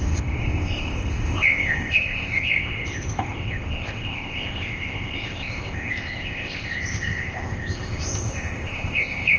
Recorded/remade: remade